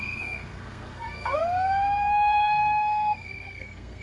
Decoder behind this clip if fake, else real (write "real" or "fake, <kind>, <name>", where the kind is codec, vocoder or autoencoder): fake, codec, SNAC